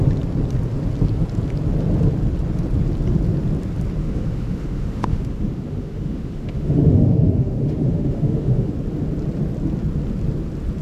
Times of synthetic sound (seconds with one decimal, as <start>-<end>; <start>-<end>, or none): 4.0-8.7